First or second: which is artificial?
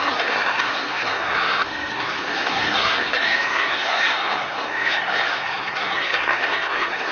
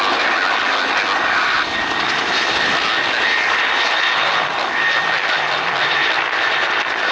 first